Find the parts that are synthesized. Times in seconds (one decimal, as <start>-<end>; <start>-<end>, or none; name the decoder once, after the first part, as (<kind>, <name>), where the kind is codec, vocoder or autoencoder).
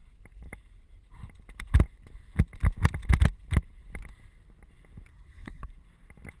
5.1-5.7 (codec, SNAC)